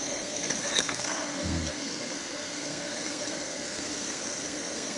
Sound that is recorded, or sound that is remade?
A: remade